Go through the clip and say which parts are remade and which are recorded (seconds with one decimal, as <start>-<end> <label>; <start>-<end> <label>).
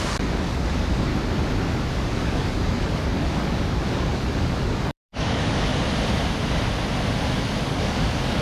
0.0-1.1 remade; 1.1-1.9 recorded; 1.9-5.7 remade; 5.7-7.6 recorded; 7.6-8.4 remade